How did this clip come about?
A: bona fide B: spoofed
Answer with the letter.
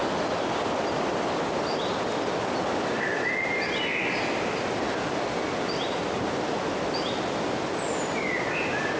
A